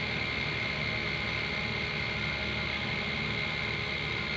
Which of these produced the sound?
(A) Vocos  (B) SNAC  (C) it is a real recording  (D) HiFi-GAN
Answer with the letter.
C